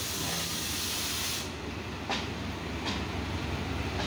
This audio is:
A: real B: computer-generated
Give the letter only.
A